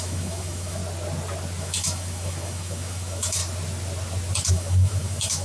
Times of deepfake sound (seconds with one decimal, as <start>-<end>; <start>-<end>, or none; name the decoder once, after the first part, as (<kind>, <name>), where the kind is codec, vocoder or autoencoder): 0.0-0.8 (autoencoder, DAC-VAE); 1.6-3.4; 4.5-5.4